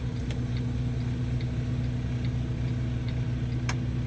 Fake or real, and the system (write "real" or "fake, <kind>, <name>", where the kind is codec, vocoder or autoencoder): real